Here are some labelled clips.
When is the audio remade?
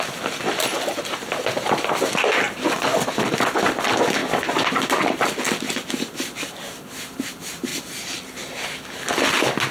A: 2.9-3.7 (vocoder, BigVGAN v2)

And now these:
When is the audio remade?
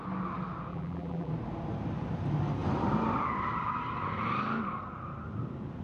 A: 0.7-1.3 (vocoder, BigVGAN v2)